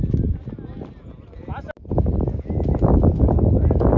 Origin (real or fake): real